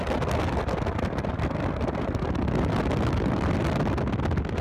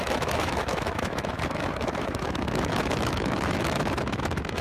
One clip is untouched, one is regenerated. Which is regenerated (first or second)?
second